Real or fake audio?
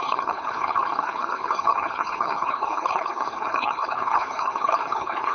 fake